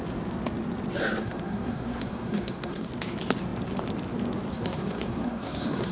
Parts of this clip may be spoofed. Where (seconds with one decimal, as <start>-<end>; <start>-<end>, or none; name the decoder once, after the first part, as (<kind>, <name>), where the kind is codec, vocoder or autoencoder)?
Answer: 1.0-2.9 (codec, SNAC); 4.5-5.9